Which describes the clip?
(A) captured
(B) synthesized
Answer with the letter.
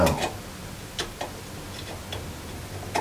A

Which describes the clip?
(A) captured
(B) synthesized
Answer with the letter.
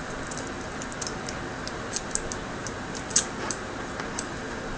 A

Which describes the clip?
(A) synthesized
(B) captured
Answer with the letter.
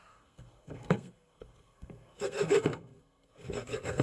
A